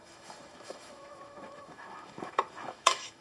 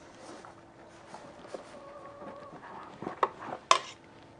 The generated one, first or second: first